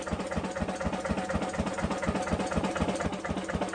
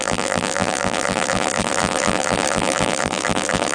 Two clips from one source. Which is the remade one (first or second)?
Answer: second